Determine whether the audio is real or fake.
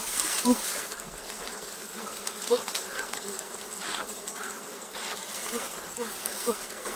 fake